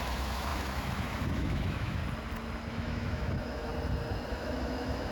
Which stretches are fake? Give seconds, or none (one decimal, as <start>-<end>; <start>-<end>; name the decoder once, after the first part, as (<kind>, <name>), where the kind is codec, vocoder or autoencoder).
0.0-2.0 (autoencoder, DAC-VAE); 2.7-3.7; 4.3-5.1